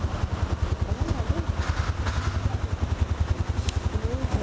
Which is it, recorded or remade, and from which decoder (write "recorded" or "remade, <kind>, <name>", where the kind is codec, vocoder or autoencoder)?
recorded